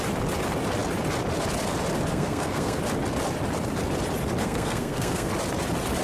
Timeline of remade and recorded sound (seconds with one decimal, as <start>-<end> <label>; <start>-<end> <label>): 0.0-2.1 recorded; 2.1-2.8 remade; 2.8-4.4 recorded; 4.4-5.3 remade; 5.3-6.0 recorded